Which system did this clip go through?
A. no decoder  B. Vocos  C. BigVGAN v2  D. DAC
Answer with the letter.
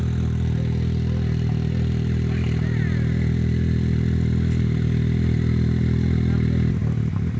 A